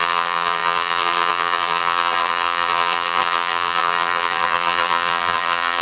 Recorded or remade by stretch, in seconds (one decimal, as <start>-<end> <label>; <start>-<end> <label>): 0.0-5.8 remade